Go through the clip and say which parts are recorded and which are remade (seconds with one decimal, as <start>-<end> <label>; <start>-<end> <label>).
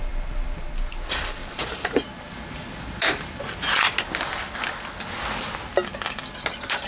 0.0-1.4 recorded; 1.4-3.4 remade; 3.4-6.9 recorded